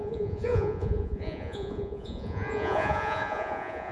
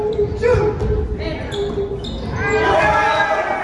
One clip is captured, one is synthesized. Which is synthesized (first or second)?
first